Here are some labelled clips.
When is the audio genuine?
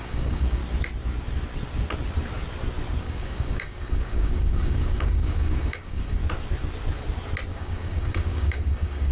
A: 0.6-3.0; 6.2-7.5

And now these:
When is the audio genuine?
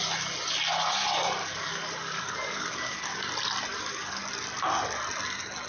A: 0.0-1.4; 3.2-3.7; 4.2-5.7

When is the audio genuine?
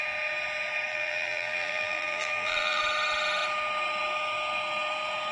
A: 0.0-0.9; 2.8-5.3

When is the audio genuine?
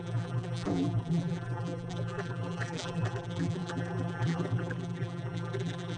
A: none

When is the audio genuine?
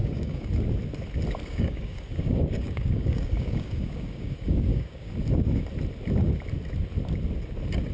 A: 0.5-1.5; 5.1-7.9